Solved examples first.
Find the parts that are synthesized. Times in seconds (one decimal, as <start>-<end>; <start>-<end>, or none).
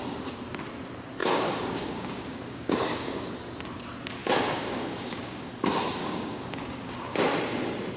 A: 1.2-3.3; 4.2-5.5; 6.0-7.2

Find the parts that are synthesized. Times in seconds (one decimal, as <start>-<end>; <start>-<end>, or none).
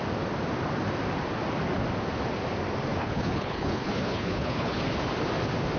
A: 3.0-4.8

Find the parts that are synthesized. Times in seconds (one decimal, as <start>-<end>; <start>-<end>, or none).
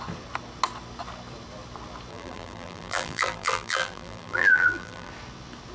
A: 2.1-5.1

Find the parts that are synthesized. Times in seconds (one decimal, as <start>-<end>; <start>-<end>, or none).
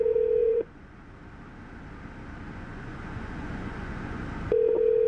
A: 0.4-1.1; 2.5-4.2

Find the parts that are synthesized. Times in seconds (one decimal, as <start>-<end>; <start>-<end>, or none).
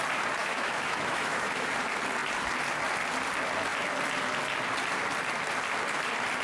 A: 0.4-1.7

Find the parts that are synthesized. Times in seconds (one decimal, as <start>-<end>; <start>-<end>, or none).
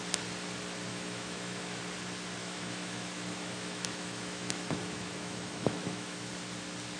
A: 0.9-1.8; 2.4-6.3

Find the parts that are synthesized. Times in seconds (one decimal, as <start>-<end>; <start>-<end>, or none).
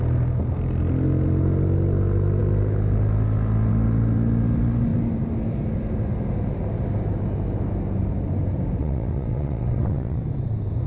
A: 8.8-10.2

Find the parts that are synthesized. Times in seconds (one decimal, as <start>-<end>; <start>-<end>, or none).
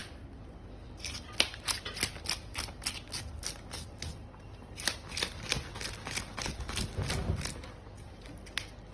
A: 0.0-1.0